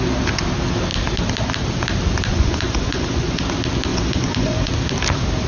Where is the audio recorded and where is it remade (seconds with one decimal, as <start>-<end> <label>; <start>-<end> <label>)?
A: 0.0-2.3 recorded; 2.3-3.4 remade; 3.4-3.9 recorded; 3.9-4.7 remade; 4.7-5.5 recorded